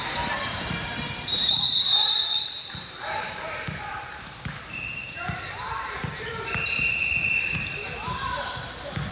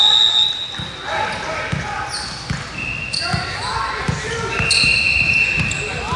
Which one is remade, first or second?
first